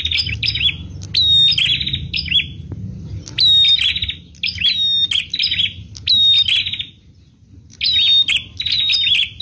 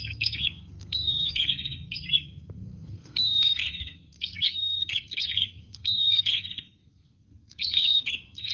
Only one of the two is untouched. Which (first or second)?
first